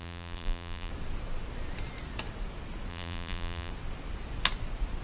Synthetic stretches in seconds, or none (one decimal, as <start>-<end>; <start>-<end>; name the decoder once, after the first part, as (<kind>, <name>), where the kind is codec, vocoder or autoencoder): 0.0-0.9 (vocoder, BigVGAN v2); 2.9-3.7